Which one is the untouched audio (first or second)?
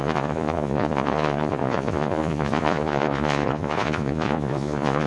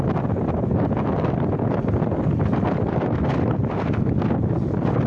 second